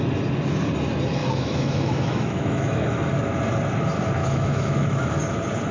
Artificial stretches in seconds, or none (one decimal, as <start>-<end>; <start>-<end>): 1.2-3.0; 4.2-5.2

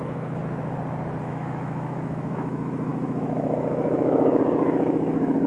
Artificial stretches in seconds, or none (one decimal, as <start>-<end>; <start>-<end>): 0.0-0.4; 1.2-5.5

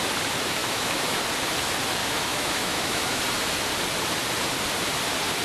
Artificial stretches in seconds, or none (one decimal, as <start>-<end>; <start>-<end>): 0.6-1.2; 2.0-3.2

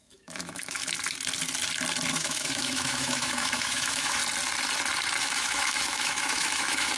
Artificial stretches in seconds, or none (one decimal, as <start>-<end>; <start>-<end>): 0.0-0.8; 2.1-4.2; 5.2-7.0

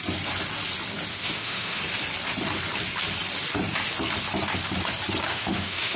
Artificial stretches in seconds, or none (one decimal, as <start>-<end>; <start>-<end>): 1.1-1.8; 5.3-6.0

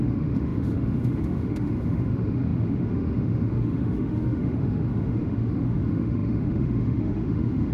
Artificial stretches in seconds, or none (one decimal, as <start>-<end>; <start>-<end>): 0.0-7.7

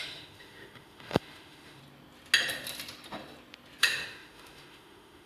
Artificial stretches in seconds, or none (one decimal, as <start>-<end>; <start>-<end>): 0.0-1.8; 3.8-5.3